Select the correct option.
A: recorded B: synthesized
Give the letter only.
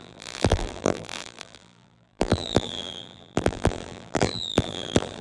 B